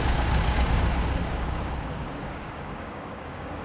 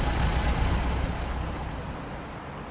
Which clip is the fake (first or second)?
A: first